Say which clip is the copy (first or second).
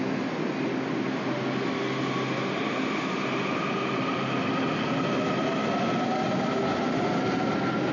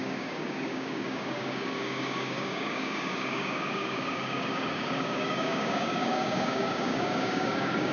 second